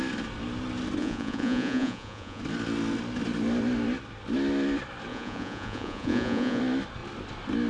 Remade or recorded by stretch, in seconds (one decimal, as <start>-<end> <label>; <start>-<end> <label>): 0.0-1.0 recorded; 1.0-2.4 remade; 2.4-5.1 recorded; 5.1-6.6 remade; 6.6-7.7 recorded